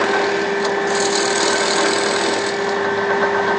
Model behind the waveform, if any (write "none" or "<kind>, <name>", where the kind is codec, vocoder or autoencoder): none